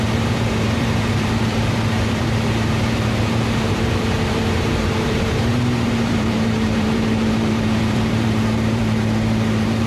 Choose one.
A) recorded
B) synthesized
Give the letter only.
B